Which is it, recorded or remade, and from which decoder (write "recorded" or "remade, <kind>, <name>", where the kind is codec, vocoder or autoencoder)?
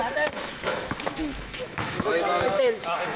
remade, autoencoder, DAC-VAE